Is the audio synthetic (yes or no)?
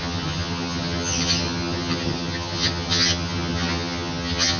yes